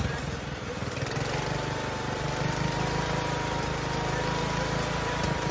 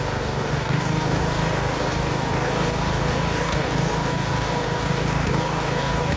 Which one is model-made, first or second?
second